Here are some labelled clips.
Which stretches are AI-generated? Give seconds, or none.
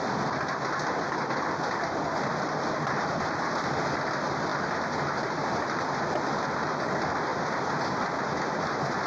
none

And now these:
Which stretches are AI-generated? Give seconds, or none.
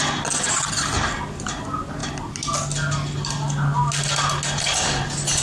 none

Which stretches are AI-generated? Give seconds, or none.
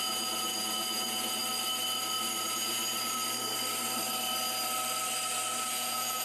0.0-1.4 (vocoder, Vocos); 2.4-2.8; 5.6-6.2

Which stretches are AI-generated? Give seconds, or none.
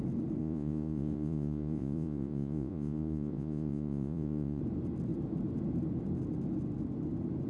0.4-4.6 (vocoder, Vocos)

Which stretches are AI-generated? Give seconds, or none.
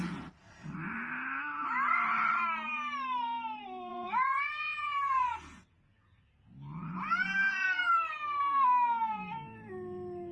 3.9-6.2 (vocoder, Vocos); 7.4-7.9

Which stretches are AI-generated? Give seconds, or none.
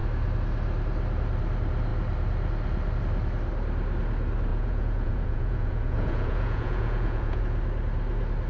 4.5-7.4 (vocoder, Vocos)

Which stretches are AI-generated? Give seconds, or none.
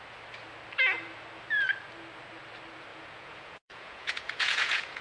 2.9-5.0 (vocoder, Vocos)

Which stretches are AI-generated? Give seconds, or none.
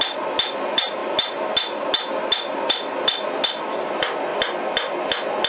none